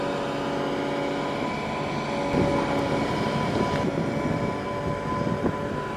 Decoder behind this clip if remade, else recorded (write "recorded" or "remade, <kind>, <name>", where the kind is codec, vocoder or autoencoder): recorded